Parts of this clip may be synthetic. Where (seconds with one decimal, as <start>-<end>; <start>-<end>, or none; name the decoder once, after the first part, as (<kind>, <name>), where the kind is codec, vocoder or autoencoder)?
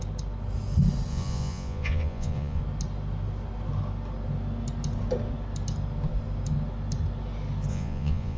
1.1-2.6 (vocoder, Vocos); 7.7-8.4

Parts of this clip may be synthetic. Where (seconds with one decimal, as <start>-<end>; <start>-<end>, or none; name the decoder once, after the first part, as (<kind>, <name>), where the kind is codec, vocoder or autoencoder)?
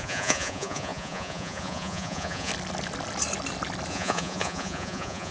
0.0-2.5 (vocoder, Vocos); 3.9-5.3